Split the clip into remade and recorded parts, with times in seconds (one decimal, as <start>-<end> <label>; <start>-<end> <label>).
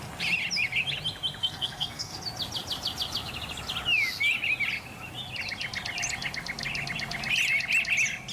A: 0.0-1.4 recorded; 1.4-2.2 remade; 2.2-8.3 recorded